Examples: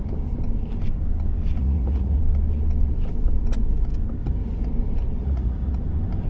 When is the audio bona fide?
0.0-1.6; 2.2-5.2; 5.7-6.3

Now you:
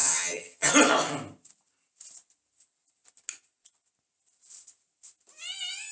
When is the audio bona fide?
0.7-5.9

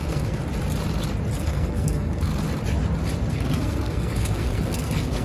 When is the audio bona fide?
0.4-1.4; 2.3-3.3

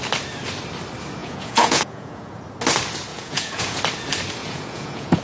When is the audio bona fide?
0.0-1.2; 2.4-3.1; 3.8-4.4

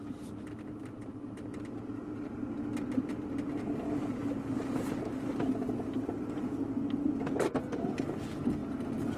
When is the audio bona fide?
0.0-9.2

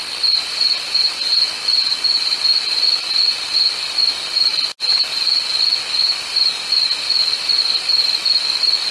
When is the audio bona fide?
0.0-8.9

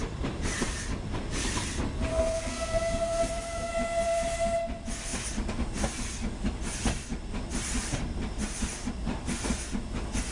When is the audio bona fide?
0.0-2.1; 3.7-10.3

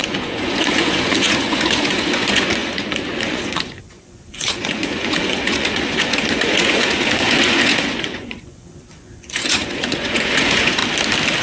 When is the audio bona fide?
10.8-11.4